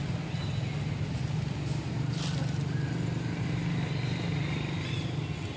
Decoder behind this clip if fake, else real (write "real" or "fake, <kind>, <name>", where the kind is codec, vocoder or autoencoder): real